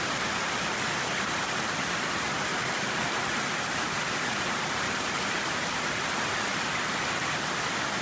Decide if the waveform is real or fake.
real